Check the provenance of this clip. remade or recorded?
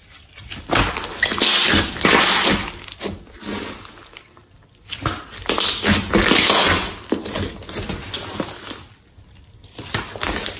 recorded